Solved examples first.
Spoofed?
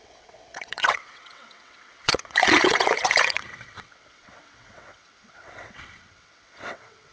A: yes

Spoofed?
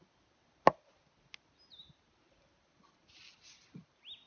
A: no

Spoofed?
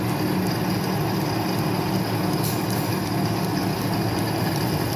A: no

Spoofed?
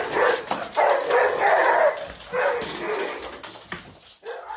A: no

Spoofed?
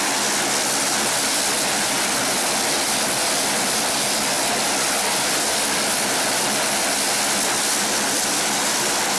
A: no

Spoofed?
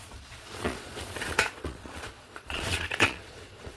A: yes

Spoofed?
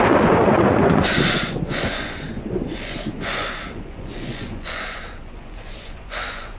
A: yes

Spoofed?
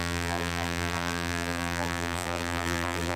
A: yes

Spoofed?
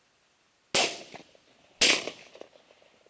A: no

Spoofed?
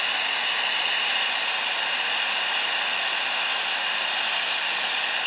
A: no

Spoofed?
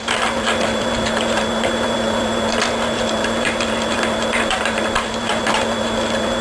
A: yes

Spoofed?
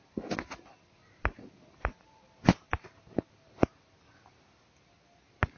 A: no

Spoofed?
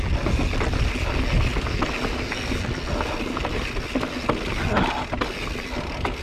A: no